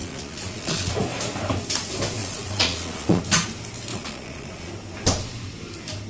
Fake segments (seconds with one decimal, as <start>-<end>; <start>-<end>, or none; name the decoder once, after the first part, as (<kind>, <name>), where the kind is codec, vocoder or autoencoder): 0.0-0.9 (vocoder, Vocos); 2.2-3.2; 3.9-4.7

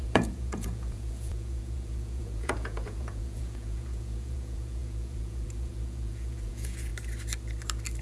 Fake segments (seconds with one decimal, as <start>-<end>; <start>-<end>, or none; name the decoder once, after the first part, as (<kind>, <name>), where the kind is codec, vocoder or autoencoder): 0.0-6.9 (vocoder, Vocos)

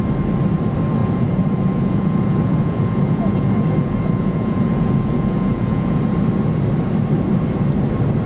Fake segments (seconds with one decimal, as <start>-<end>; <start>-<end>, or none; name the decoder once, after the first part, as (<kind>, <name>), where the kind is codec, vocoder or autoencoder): 1.0-6.0 (vocoder, Vocos)

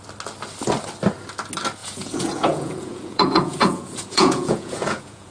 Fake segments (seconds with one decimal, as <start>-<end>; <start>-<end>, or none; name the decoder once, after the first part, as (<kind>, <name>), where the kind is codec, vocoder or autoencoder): 1.8-5.3 (vocoder, Vocos)

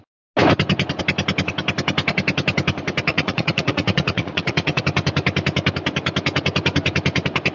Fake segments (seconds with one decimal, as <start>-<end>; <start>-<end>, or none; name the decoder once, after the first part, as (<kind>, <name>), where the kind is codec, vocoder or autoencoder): 3.1-4.8 (vocoder, Vocos)